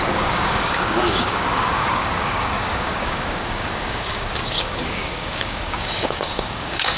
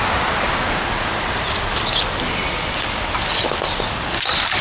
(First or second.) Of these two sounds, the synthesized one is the first